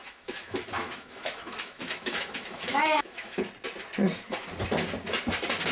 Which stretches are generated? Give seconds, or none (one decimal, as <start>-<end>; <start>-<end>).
0.0-3.4